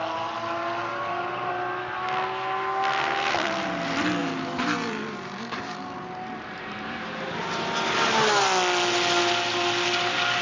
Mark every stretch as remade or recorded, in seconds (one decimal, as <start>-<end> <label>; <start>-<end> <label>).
0.0-0.8 recorded; 0.8-1.5 remade; 1.5-4.2 recorded; 4.2-7.2 remade; 7.2-10.4 recorded